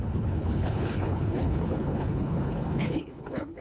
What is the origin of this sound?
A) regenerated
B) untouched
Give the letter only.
A